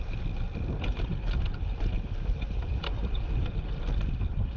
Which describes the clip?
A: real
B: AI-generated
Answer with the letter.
B